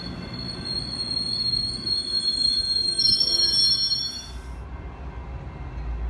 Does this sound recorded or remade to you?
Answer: recorded